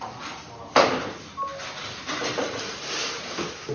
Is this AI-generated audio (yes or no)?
no